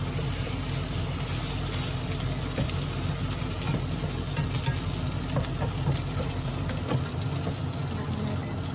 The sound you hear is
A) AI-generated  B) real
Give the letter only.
B